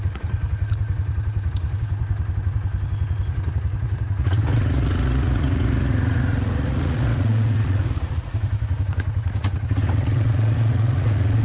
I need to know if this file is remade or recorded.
remade